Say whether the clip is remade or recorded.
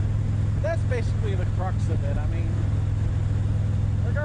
recorded